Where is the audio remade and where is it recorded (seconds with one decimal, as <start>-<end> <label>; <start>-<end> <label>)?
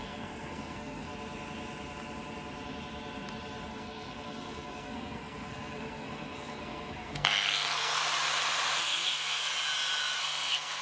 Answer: 0.0-1.1 remade; 1.1-3.7 recorded; 3.7-8.0 remade; 8.0-8.8 recorded; 8.8-9.5 remade; 9.5-10.2 recorded; 10.2-10.8 remade